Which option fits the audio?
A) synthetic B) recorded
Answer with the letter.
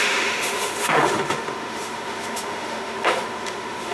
A